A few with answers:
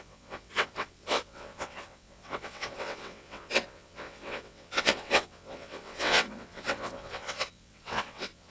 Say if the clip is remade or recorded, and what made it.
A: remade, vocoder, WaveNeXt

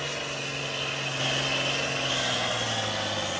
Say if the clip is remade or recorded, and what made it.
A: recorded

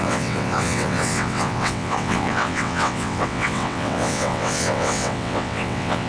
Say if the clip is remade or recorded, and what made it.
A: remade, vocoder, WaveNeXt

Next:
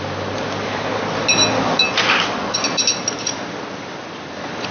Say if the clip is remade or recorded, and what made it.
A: recorded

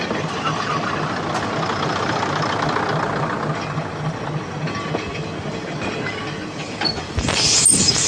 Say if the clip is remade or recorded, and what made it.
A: recorded